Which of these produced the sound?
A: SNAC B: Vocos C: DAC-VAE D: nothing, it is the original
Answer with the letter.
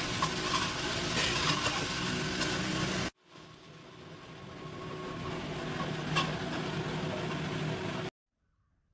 D